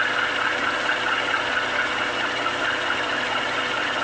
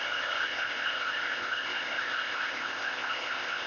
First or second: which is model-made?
second